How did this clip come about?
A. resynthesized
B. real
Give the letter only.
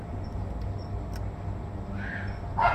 B